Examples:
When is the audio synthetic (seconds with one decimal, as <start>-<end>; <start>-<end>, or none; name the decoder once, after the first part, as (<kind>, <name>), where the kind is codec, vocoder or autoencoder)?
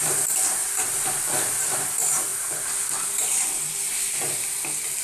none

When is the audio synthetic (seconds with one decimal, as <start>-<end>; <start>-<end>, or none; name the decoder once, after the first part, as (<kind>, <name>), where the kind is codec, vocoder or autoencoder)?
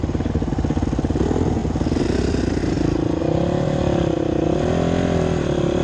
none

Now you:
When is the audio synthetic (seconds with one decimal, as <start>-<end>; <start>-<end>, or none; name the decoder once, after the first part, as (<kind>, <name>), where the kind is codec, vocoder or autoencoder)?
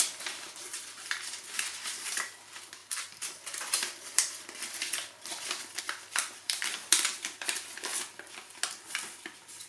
0.0-0.7 (vocoder, BigVGAN v2); 1.5-7.9; 8.8-9.7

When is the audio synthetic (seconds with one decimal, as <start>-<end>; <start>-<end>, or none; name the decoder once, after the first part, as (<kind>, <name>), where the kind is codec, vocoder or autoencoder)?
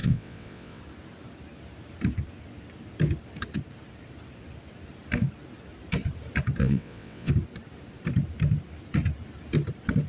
0.0-0.8 (vocoder, WaveNeXt); 6.6-7.3